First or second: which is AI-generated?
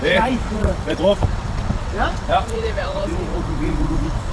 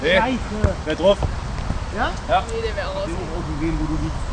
first